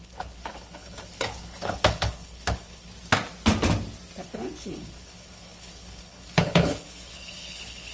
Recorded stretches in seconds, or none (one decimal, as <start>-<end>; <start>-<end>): 2.9-4.2